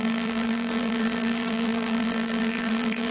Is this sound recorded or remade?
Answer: remade